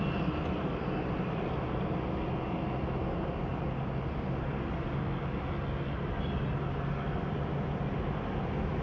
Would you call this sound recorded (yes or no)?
yes